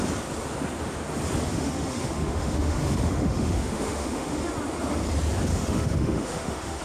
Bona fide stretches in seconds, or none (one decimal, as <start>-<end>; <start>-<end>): 0.0-1.5; 4.3-5.5